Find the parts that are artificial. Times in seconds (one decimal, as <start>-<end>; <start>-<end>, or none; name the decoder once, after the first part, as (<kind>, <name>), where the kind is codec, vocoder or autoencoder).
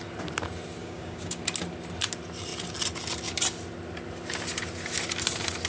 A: 0.8-1.4 (codec, DAC)